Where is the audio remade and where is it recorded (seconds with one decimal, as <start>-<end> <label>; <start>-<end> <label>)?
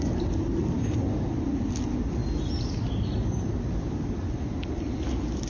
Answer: 0.0-5.5 recorded